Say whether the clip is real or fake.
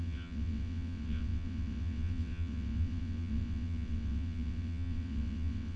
fake